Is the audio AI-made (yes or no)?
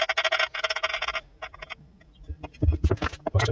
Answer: no